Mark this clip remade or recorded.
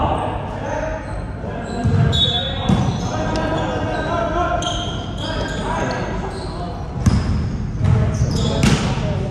recorded